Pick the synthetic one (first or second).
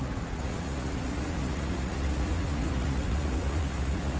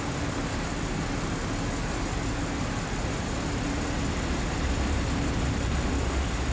first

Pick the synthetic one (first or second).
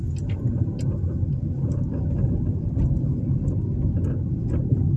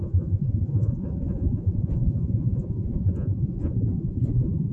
second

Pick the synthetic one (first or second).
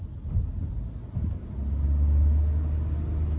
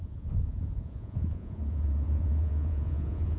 second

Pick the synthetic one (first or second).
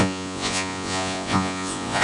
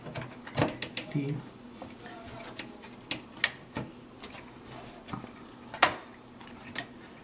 first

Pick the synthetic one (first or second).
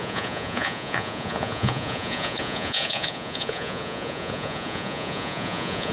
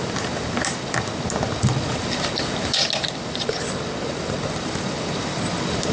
first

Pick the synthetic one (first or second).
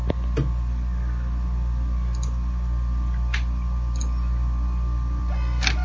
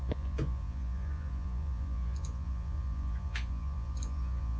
second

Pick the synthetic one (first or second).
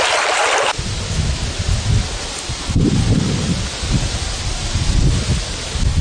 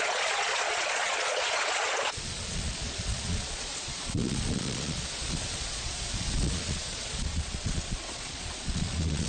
second